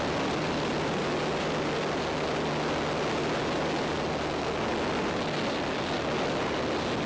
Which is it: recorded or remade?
recorded